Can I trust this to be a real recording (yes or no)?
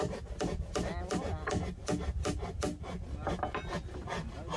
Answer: yes